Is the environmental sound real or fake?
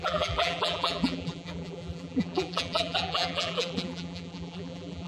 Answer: fake